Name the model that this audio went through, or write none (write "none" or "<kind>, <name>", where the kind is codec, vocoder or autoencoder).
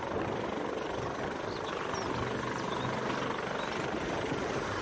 none